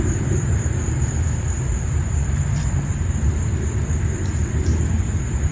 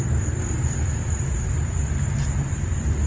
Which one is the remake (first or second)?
first